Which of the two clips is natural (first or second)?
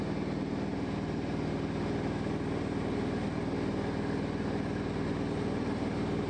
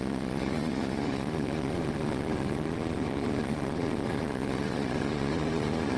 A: first